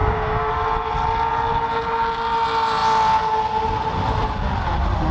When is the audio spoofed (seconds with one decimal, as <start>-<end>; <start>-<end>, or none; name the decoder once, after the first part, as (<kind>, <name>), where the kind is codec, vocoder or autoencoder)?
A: 0.0-0.5 (codec, DAC)